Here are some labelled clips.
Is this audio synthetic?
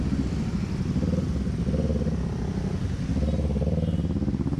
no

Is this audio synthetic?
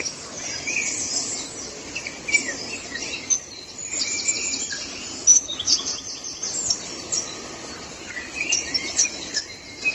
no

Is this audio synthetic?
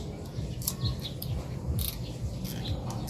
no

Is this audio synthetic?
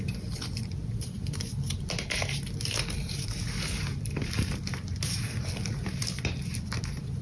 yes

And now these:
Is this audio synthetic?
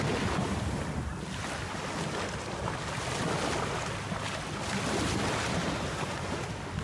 no